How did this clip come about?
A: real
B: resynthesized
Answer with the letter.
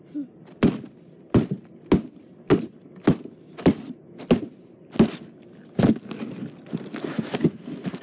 A